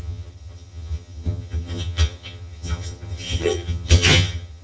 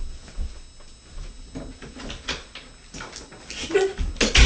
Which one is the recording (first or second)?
second